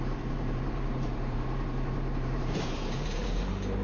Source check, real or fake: fake